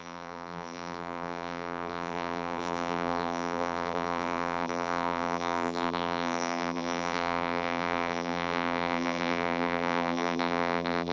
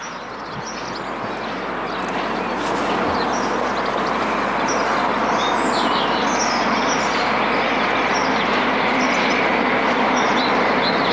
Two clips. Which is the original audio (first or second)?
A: second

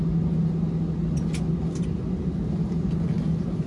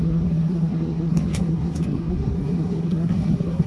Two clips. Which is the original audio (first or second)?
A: first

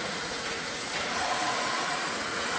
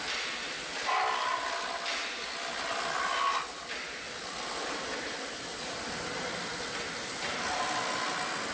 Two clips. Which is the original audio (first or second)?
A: second